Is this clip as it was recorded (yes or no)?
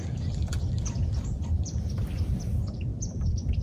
no